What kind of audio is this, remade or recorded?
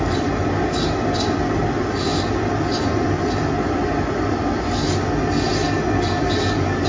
recorded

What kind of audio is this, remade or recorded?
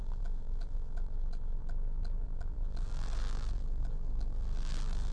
remade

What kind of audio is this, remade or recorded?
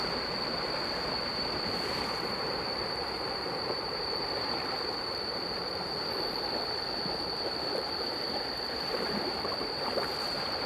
remade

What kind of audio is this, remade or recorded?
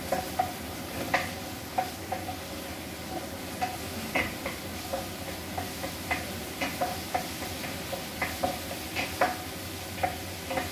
recorded